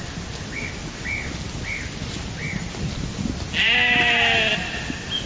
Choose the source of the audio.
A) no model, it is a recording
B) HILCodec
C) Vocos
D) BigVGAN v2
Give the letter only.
A